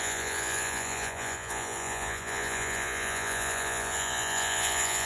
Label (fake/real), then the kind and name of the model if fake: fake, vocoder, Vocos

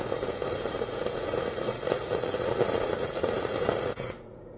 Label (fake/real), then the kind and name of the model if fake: fake, vocoder, Vocos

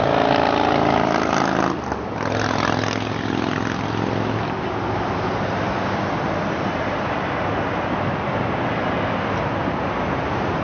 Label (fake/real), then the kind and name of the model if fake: real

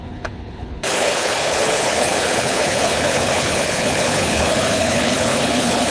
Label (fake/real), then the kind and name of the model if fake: fake, codec, HILCodec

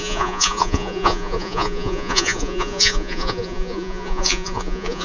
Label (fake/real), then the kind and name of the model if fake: fake, vocoder, Vocos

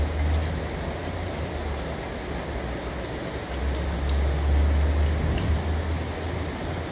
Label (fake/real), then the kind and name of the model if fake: real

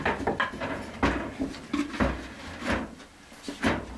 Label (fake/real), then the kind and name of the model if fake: real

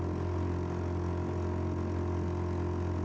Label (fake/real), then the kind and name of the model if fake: real